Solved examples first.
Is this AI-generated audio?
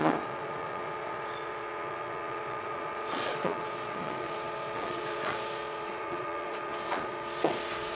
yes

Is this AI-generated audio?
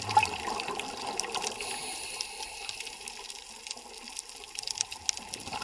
no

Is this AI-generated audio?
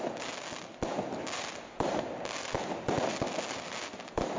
no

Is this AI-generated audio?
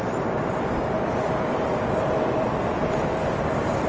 yes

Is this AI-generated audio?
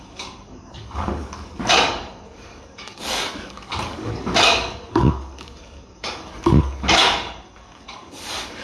yes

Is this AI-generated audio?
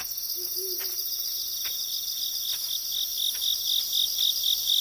no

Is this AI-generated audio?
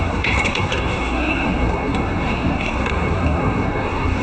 yes